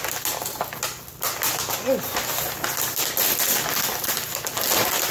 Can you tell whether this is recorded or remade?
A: recorded